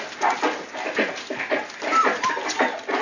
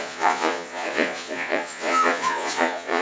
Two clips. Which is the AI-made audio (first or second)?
second